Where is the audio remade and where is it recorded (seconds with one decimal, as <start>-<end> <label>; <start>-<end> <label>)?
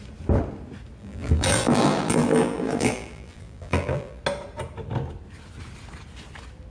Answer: 0.0-1.0 recorded; 1.0-4.2 remade; 4.2-6.7 recorded